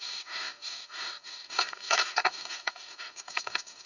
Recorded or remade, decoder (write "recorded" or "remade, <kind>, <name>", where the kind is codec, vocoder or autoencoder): remade, codec, DAC